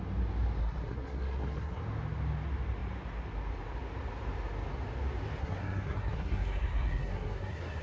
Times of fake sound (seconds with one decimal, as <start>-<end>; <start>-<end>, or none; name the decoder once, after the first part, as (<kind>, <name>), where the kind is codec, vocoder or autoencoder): 0.6-1.8 (codec, SNAC); 5.4-7.8